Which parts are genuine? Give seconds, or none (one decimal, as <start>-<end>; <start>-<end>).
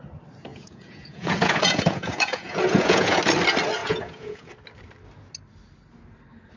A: 0.0-0.5; 3.2-3.8; 4.5-6.6